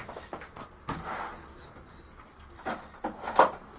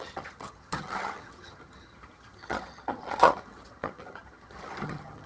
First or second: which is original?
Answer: first